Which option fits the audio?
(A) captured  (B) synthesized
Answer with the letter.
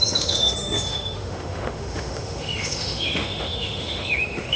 B